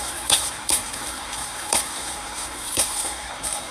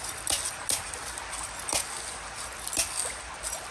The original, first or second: second